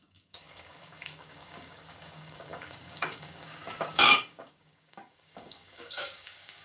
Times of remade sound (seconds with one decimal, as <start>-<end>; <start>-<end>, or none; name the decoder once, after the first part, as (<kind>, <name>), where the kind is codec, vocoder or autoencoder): 0.0-6.6 (codec, DAC)